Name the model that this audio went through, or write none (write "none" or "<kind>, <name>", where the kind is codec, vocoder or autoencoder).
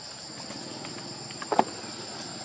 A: none